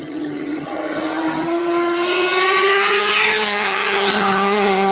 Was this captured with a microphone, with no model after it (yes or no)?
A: no